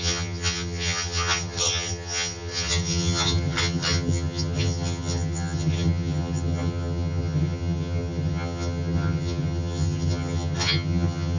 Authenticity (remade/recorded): remade